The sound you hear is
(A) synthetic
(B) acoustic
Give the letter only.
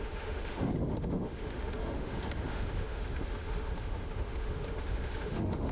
A